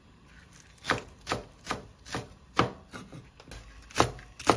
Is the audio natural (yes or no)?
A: yes